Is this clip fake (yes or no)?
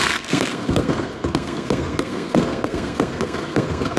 yes